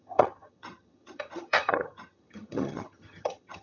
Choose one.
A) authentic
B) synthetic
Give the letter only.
B